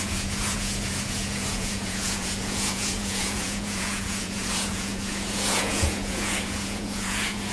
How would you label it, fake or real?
fake